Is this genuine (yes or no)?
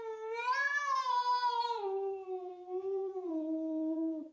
no